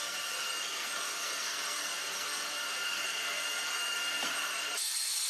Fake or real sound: fake